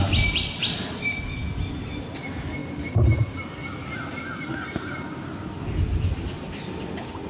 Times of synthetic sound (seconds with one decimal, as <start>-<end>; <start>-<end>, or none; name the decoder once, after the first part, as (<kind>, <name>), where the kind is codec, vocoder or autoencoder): none